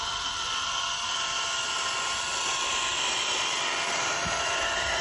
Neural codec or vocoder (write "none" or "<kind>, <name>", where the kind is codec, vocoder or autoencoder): vocoder, BigVGAN v2